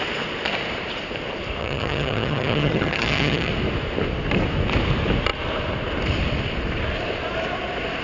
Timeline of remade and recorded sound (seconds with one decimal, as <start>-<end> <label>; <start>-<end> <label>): 0.0-1.6 recorded; 1.6-3.5 remade; 3.5-8.0 recorded